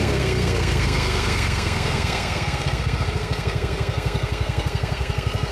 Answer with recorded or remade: remade